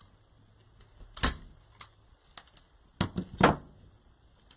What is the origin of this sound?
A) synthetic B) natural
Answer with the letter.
B